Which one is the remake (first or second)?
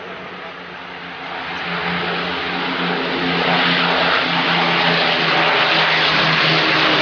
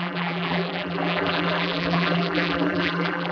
second